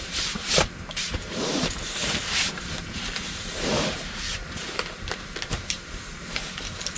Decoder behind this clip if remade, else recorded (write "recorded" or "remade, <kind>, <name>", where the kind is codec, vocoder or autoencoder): remade, vocoder, BigVGAN v2